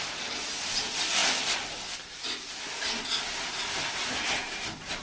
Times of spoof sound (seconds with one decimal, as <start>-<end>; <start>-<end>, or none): none